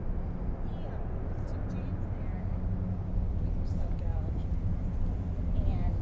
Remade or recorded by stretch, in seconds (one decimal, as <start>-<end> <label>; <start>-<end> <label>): 0.0-6.0 recorded